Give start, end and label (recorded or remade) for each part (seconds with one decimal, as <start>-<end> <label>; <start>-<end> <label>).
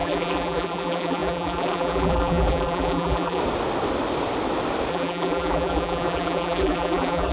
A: 0.0-3.4 remade; 3.4-4.9 recorded; 4.9-7.3 remade